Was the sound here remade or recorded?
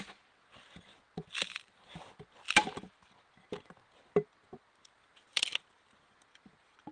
recorded